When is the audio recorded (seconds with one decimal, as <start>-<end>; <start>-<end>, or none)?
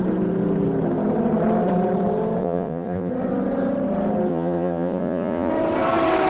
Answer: 0.0-2.4; 3.1-4.3; 5.5-6.3